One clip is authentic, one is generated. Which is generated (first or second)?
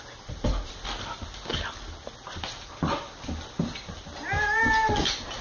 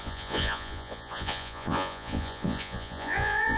second